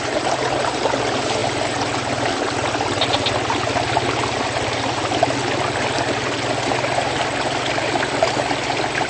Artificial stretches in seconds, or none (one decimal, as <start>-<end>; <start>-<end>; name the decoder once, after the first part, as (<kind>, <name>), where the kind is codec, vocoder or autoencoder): none